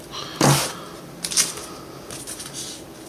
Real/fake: real